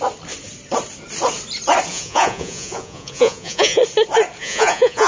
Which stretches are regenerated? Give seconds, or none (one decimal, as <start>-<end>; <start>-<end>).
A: 1.9-3.8; 4.4-5.1